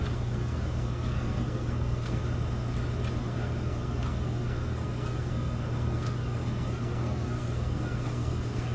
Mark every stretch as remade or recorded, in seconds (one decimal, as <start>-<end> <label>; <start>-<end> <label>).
0.0-2.2 remade; 2.2-3.2 recorded; 3.2-8.7 remade